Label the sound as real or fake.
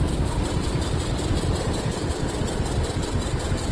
fake